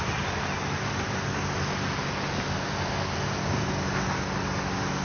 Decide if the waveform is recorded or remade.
recorded